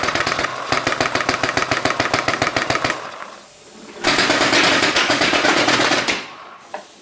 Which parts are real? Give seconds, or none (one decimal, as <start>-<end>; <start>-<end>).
0.5-4.7